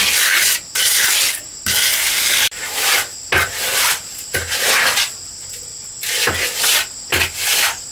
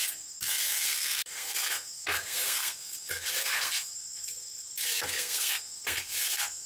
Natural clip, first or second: first